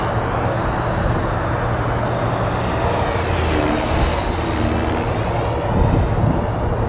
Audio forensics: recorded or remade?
recorded